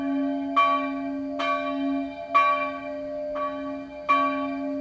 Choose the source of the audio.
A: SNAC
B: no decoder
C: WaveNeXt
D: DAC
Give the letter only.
B